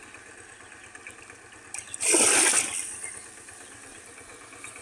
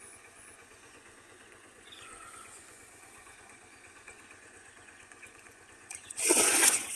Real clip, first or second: first